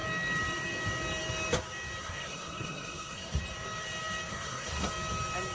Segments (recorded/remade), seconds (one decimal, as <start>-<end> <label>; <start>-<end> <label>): 0.0-2.0 recorded; 2.0-3.4 remade; 3.4-4.3 recorded; 4.3-4.9 remade; 4.9-5.5 recorded